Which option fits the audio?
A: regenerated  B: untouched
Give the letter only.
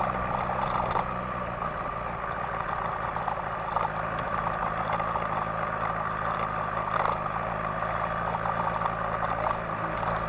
B